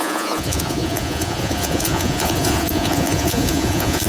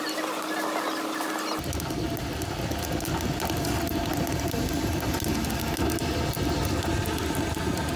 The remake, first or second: first